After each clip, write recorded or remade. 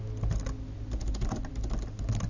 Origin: recorded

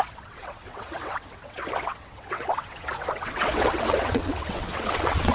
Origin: remade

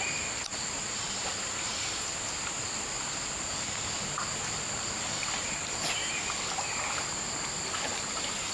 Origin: recorded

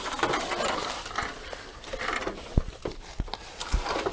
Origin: recorded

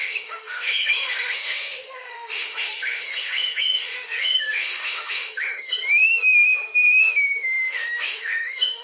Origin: remade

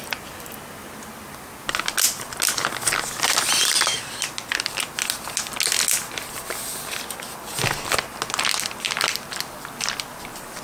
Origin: recorded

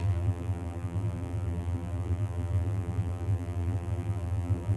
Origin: remade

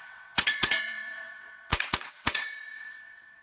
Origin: remade